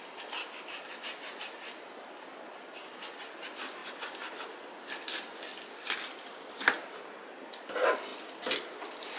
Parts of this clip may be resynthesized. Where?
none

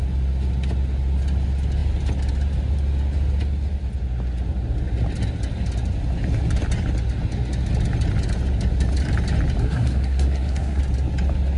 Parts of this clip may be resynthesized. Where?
9.6-10.8

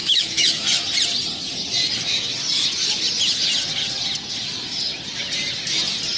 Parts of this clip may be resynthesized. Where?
0.0-0.8

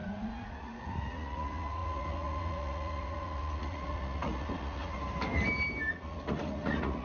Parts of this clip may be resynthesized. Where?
0.0-5.0; 5.9-7.0

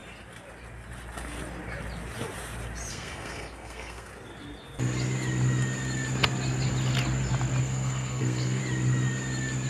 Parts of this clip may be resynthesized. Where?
2.9-4.1; 7.6-8.6

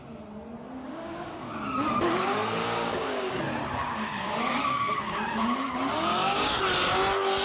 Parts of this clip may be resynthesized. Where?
0.8-1.5; 2.6-3.4; 3.8-5.6; 6.1-6.6